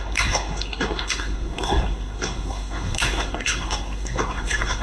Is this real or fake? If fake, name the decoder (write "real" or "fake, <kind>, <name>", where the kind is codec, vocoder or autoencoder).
fake, codec, SNAC